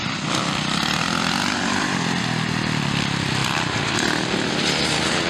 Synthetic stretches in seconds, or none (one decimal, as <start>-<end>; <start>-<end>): 0.4-2.2; 3.4-4.5